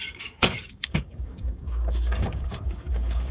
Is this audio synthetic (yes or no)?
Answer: yes